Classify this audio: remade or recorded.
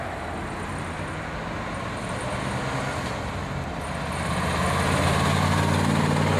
recorded